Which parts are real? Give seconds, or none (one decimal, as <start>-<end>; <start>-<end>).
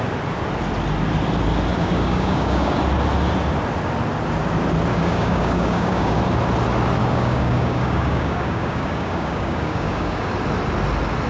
0.0-1.7; 2.8-4.9; 6.2-7.0; 10.3-11.3